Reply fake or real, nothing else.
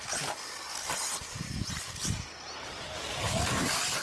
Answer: real